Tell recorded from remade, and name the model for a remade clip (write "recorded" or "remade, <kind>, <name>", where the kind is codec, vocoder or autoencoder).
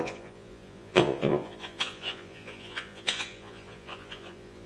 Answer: remade, vocoder, Vocos